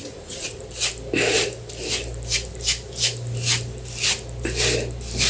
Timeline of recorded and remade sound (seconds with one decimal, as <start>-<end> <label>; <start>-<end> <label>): 0.0-0.6 remade; 0.6-5.3 recorded